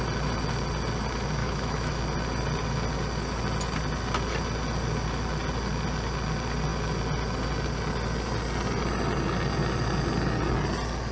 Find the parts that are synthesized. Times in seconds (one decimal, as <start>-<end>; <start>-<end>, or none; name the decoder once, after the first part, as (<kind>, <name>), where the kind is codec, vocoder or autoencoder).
1.4-2.0 (autoencoder, DAC-VAE)